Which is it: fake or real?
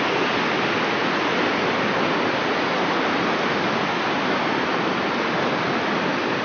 real